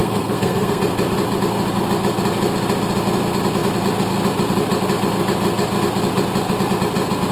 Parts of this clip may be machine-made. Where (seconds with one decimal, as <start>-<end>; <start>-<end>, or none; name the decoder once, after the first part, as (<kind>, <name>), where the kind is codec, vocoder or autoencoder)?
0.0-0.8 (codec, SNAC)